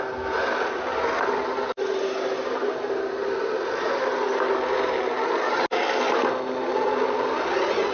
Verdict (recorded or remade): recorded